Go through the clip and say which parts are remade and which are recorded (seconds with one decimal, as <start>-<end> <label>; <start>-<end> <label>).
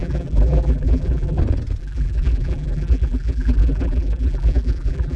0.0-1.4 remade; 1.4-1.8 recorded; 1.8-5.2 remade